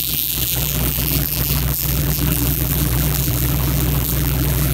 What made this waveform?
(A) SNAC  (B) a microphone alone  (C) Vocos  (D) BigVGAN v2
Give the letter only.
D